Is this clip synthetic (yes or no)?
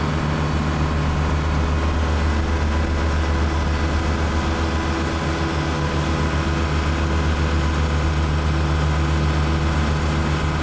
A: no